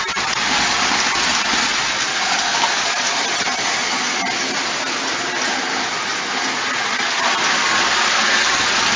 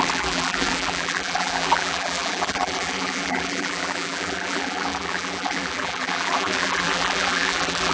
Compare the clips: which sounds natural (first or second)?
first